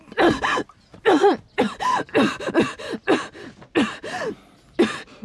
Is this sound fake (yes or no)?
no